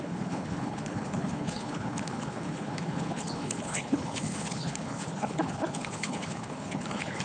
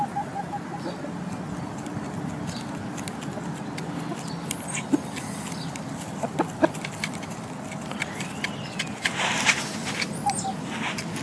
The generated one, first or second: first